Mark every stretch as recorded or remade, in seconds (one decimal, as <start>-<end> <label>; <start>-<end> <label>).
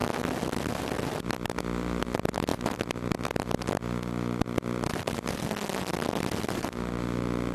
0.0-7.5 recorded